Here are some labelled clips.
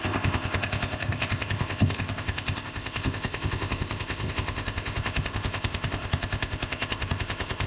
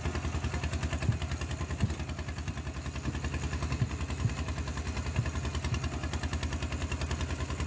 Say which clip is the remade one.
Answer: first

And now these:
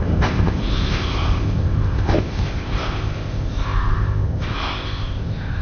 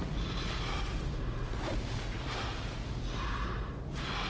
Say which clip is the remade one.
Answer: first